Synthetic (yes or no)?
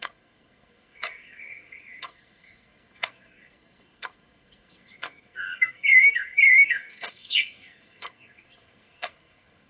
yes